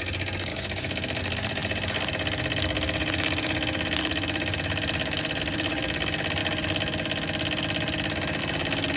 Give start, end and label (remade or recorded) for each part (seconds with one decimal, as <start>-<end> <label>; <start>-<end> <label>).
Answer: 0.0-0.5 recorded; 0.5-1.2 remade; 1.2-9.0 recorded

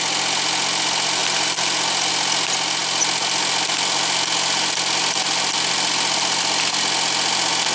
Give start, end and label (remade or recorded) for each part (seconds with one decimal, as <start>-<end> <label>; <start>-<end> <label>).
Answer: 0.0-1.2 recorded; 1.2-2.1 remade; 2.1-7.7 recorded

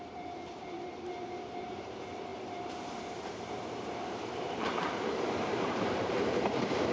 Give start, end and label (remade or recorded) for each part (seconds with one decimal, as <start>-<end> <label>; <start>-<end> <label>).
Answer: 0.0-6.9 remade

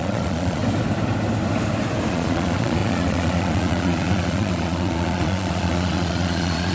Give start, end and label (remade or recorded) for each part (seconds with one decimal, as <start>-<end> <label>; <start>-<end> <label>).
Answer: 0.0-0.6 remade; 0.6-2.1 recorded; 2.1-6.7 remade

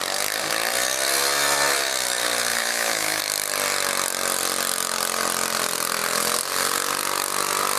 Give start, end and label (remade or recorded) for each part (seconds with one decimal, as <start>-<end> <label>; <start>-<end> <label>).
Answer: 0.0-2.5 recorded; 2.5-3.2 remade; 3.2-7.8 recorded